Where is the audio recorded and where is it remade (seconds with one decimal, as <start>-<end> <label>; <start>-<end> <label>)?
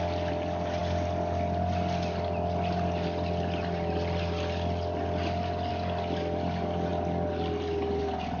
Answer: 0.0-8.4 recorded